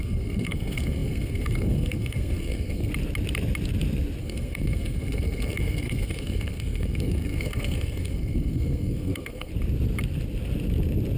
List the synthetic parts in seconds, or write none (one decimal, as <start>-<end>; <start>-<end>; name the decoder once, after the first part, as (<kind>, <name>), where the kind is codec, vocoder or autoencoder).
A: 0.0-2.9 (codec, SNAC); 4.2-9.5